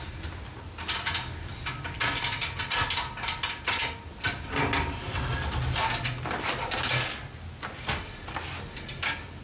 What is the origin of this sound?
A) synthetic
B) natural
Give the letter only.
B